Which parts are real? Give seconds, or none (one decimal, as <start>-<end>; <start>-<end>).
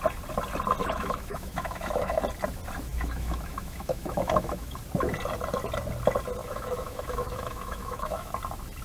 0.0-0.8; 2.2-2.9; 4.8-6.4; 8.3-8.8